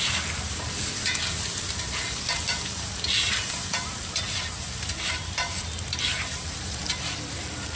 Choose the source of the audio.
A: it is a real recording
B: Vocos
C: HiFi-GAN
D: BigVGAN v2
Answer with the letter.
D